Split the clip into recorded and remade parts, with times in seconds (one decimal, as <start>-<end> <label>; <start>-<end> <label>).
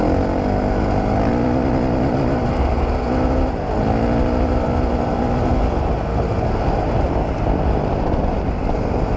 0.0-9.2 recorded